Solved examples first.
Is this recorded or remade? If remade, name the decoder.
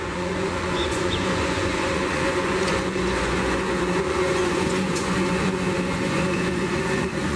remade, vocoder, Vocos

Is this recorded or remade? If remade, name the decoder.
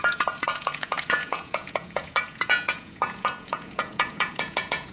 remade, vocoder, Vocos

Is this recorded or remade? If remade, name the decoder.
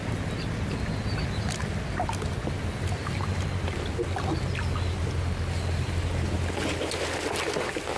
recorded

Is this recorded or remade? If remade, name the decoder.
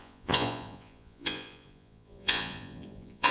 remade, vocoder, Vocos